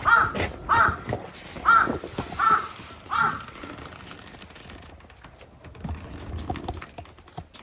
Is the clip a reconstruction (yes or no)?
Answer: no